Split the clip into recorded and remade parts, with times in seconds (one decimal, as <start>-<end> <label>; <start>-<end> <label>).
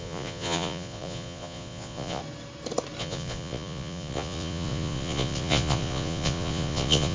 0.0-2.2 remade; 2.2-3.0 recorded; 3.0-7.1 remade